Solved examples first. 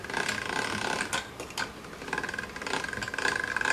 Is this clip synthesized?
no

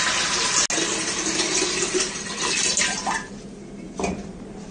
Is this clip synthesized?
no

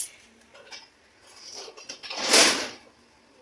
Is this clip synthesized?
no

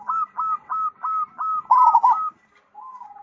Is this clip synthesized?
no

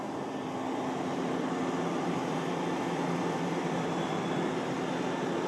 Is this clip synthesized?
no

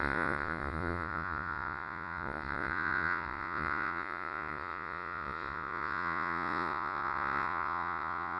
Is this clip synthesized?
yes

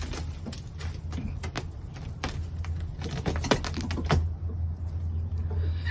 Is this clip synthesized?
no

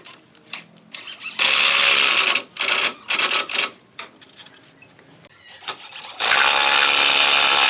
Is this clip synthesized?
no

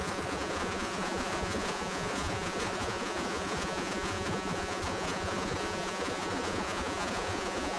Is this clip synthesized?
yes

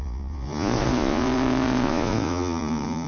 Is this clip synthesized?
yes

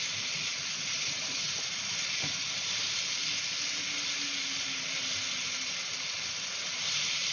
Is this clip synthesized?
no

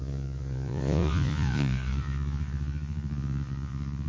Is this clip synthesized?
yes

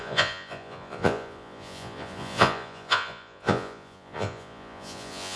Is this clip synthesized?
yes